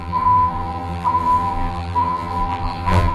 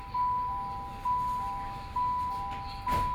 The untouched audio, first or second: second